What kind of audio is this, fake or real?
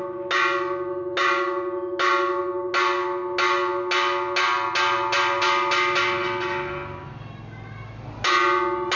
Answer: real